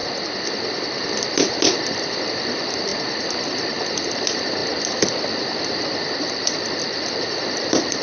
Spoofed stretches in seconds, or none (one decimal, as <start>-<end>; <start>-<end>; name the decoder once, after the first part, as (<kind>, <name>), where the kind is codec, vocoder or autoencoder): 2.3-2.9 (vocoder, BigVGAN v2); 4.0-4.6; 5.8-8.0